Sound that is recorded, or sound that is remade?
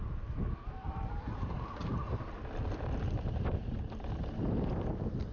recorded